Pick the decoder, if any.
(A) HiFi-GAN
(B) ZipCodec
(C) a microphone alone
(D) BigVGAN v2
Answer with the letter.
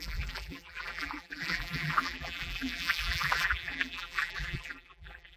D